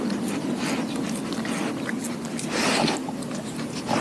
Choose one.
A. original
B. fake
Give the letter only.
A